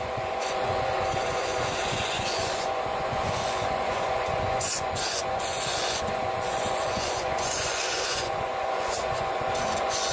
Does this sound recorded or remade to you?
remade